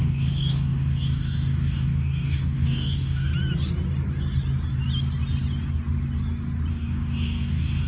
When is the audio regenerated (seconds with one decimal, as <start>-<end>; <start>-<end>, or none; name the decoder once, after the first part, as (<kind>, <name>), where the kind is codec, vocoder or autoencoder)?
0.0-3.3 (codec, DAC); 6.7-7.9